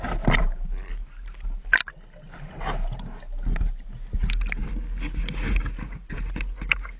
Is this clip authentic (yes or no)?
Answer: yes